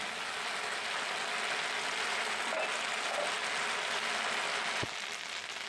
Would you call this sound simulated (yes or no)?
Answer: no